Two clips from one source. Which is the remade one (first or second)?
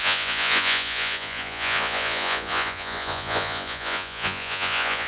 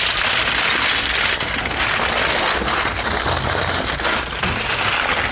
first